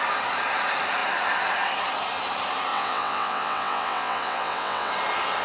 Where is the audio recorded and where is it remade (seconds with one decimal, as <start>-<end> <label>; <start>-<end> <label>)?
0.0-2.7 recorded; 2.7-4.9 remade; 4.9-5.4 recorded